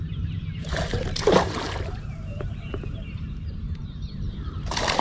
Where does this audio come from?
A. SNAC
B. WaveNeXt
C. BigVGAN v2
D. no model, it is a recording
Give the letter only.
C